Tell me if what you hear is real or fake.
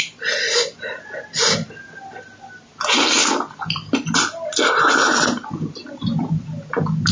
real